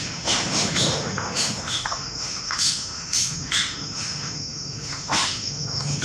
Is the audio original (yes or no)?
no